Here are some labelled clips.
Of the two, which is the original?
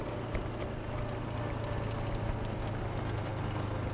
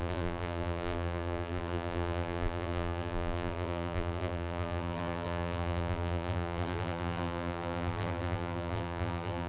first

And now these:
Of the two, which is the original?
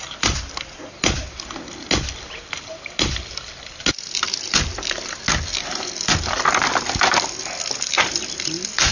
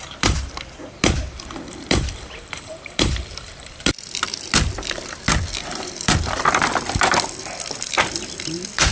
first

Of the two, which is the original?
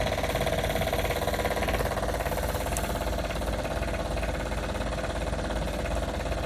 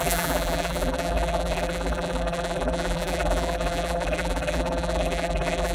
first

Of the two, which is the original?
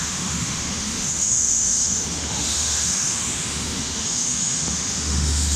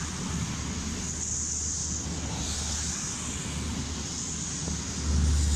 second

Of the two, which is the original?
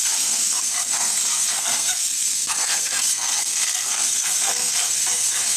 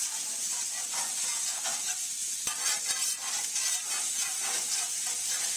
second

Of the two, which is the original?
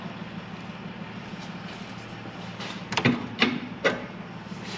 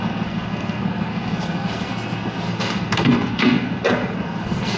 first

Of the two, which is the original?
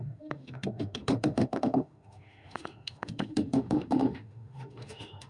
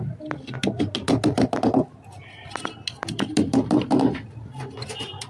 second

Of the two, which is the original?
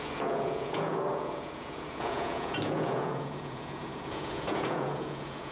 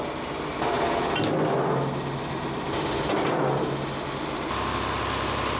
second